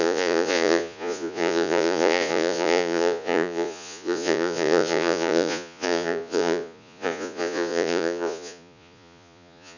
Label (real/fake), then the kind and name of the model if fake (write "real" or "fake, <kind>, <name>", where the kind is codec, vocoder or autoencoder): fake, vocoder, Vocos